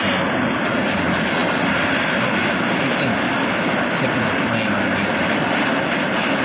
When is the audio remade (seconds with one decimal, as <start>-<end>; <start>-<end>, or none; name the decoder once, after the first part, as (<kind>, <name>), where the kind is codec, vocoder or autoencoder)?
none